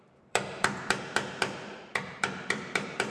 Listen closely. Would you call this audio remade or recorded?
remade